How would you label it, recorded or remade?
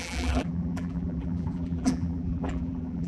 remade